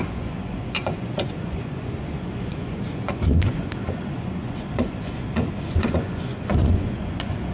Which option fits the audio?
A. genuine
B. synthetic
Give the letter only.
B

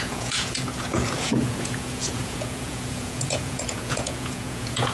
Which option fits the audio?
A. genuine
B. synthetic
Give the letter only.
B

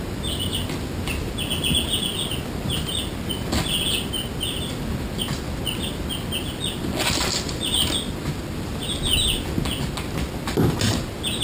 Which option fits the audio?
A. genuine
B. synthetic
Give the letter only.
A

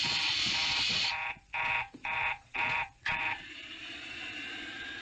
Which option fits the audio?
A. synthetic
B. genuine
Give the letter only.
A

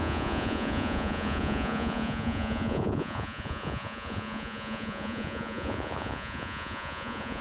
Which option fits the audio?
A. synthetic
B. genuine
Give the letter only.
A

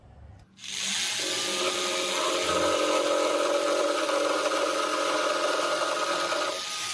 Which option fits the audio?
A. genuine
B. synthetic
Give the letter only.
A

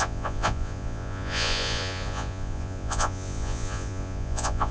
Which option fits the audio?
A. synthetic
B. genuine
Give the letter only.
A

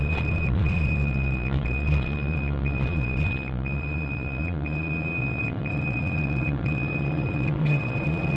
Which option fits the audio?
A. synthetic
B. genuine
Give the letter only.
A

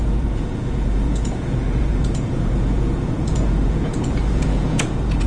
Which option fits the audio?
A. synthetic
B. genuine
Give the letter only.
A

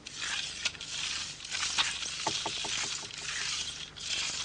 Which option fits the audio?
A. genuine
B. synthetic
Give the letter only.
A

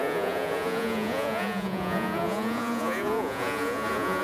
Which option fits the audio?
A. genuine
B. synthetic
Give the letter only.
B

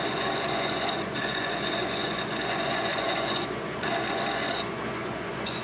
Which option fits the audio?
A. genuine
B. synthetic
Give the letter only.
B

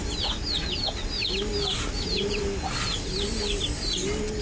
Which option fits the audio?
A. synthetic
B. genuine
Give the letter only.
B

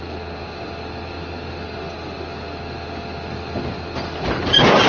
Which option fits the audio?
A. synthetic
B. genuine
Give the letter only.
B